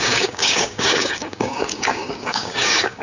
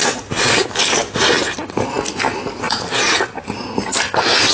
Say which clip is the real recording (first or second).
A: second